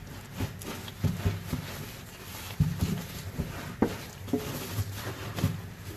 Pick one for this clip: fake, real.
real